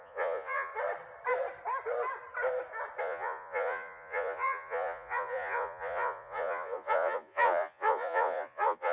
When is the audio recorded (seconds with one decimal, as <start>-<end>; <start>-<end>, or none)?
0.7-3.0